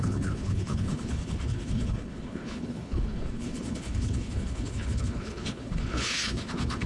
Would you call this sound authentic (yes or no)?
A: no